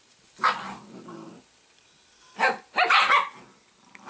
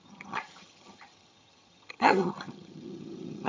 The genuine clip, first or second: first